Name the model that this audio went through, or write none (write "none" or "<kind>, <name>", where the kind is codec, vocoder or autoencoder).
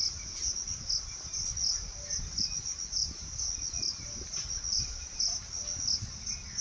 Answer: none